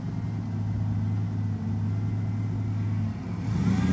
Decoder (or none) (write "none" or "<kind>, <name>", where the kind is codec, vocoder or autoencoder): none